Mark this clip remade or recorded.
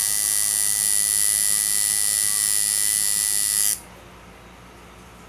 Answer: recorded